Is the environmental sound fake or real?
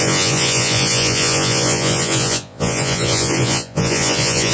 fake